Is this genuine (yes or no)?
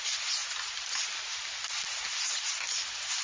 yes